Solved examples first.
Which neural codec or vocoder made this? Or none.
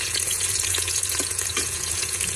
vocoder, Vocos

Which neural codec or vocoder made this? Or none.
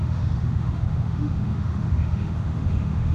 autoencoder, DAC-VAE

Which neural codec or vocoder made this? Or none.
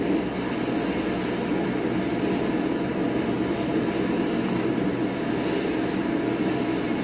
none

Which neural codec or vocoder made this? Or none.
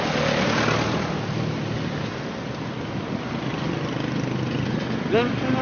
none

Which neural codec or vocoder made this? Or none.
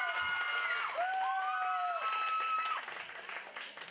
none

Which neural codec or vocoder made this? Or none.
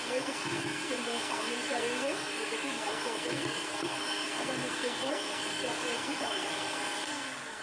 codec, SNAC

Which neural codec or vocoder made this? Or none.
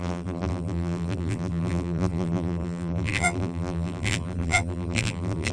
vocoder, BigVGAN v2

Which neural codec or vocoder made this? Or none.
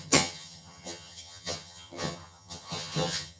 vocoder, HiFi-GAN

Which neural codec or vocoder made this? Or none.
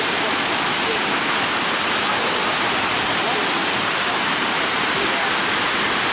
none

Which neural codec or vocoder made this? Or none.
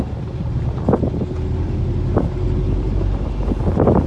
none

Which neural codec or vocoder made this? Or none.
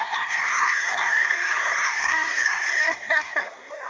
codec, SNAC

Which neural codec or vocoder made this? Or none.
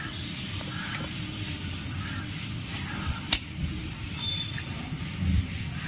vocoder, BigVGAN v2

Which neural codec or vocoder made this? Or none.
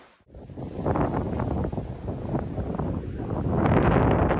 none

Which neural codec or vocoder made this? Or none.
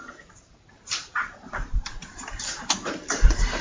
vocoder, BigVGAN v2